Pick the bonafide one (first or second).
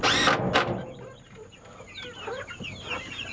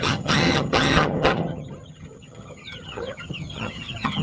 first